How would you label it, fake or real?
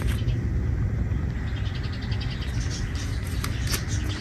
real